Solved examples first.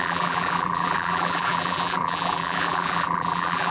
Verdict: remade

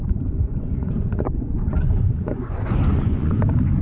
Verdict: remade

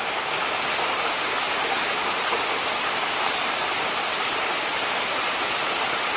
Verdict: remade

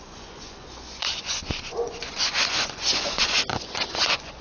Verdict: remade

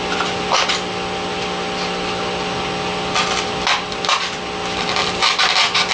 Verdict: recorded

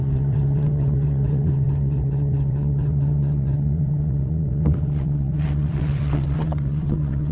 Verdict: remade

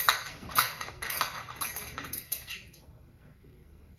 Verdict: remade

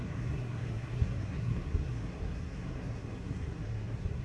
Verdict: remade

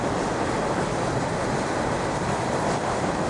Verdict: recorded